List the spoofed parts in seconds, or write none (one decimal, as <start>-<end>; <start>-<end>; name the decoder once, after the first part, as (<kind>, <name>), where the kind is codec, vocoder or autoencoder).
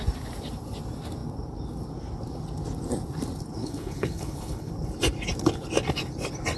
3.6-4.7 (codec, HILCodec)